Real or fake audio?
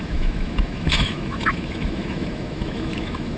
fake